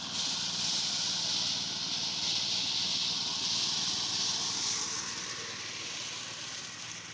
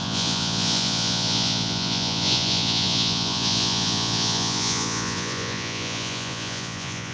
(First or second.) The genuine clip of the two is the first